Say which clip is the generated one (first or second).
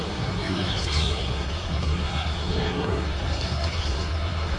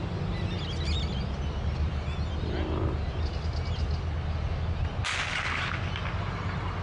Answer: first